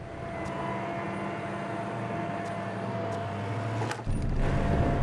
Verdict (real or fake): real